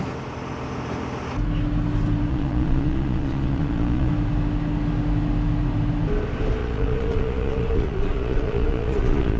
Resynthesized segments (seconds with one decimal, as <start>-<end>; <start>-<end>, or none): 2.3-4.1; 6.6-9.4